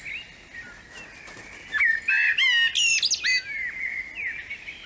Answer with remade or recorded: recorded